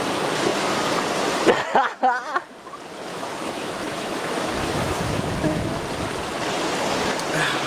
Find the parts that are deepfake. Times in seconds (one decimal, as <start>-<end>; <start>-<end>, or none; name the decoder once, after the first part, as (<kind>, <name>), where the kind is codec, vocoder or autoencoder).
3.1-5.8 (autoencoder, DAC-VAE)